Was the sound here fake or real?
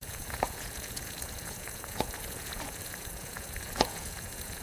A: fake